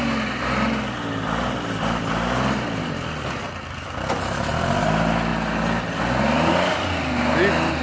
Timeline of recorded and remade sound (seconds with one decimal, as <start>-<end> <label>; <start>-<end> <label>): 0.0-7.8 recorded